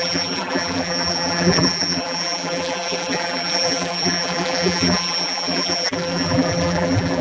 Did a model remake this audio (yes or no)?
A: yes